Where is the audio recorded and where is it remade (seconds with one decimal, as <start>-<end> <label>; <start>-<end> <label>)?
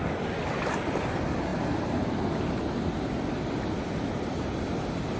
0.0-5.2 recorded